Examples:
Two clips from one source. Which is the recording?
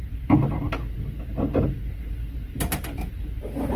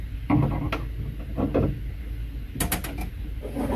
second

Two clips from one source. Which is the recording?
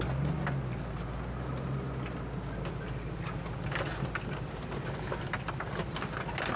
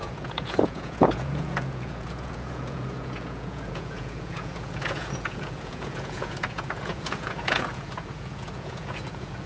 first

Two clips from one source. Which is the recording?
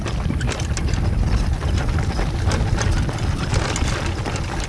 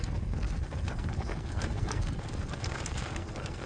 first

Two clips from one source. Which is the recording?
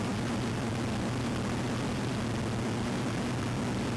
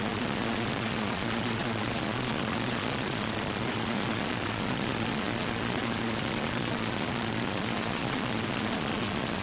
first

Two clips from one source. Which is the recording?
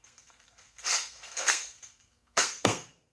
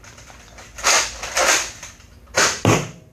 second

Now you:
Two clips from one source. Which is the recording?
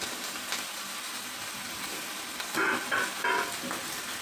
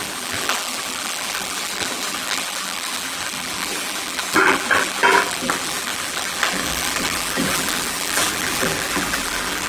first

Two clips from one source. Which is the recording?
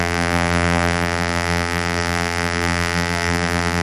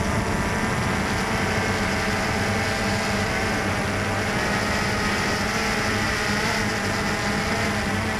second